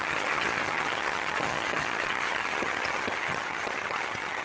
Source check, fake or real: fake